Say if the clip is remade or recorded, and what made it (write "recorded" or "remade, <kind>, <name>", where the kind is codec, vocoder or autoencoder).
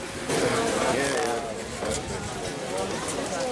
recorded